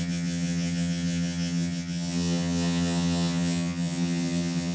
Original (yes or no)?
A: no